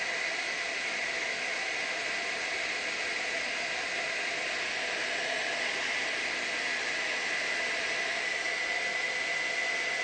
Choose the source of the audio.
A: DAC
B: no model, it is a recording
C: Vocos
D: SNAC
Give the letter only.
B